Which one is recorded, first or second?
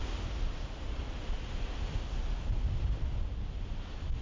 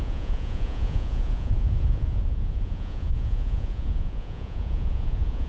first